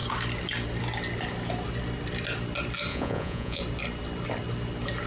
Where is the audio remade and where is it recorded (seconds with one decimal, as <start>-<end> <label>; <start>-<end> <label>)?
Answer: 0.0-2.9 recorded; 2.9-3.6 remade; 3.6-5.1 recorded